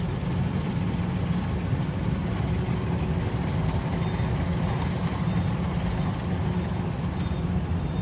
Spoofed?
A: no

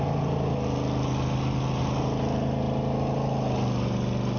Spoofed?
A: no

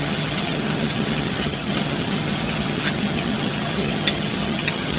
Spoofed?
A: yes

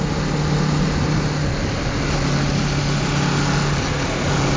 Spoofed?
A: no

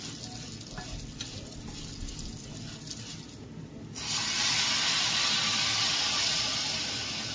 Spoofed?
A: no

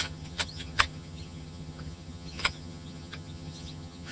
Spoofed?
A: yes